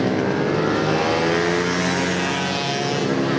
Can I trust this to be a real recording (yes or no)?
yes